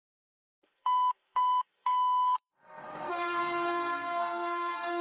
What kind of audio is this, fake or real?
fake